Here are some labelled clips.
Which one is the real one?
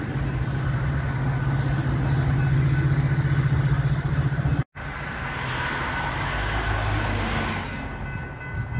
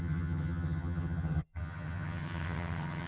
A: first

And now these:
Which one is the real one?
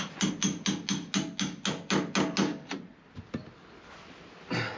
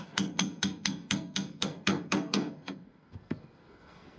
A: first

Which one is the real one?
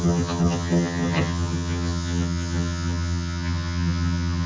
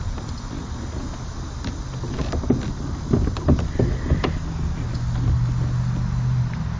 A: second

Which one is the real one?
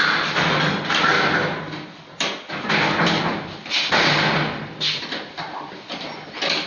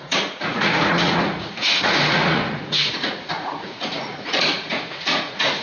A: first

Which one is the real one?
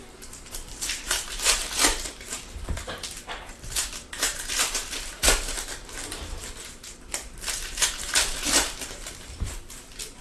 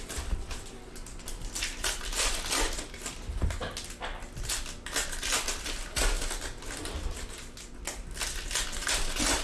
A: second